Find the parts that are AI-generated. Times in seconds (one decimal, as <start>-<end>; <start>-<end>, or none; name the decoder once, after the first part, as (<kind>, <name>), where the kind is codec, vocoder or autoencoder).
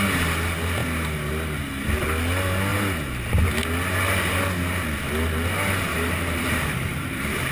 5.9-7.5 (vocoder, BigVGAN v2)